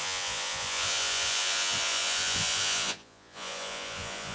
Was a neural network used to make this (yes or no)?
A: yes